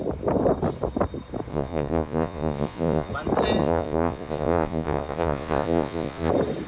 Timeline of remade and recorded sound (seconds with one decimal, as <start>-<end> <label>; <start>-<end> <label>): 0.0-1.5 recorded; 1.5-3.1 remade; 3.1-3.6 recorded; 3.6-6.3 remade; 6.3-6.7 recorded